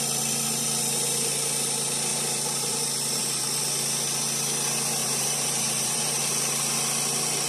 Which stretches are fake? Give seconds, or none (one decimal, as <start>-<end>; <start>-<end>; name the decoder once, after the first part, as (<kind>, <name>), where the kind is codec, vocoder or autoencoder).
2.1-3.6 (vocoder, BigVGAN v2); 5.0-6.2